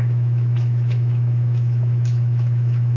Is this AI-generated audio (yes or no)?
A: yes